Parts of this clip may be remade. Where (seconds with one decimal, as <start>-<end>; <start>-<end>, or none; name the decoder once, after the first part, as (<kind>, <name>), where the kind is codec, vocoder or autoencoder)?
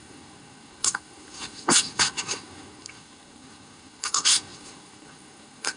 0.0-5.8 (codec, SNAC)